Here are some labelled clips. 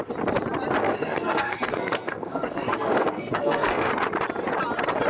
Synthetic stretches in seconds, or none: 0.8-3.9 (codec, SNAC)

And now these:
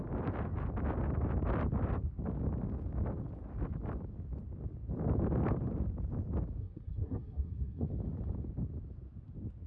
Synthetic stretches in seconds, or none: 6.6-7.8 (codec, SNAC)

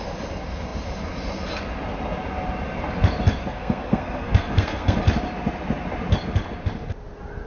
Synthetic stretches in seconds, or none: 3.4-5.0 (codec, SNAC)

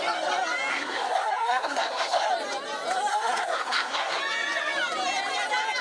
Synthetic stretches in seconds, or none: 0.7-2.3 (codec, SNAC); 3.1-4.2

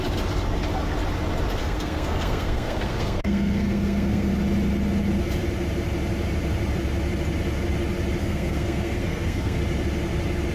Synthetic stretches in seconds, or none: 1.6-4.3 (codec, SNAC); 8.2-9.6